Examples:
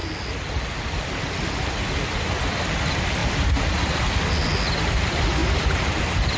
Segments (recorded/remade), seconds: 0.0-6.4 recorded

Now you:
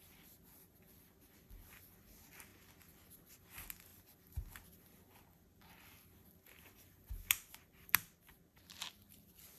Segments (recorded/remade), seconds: 0.0-9.6 recorded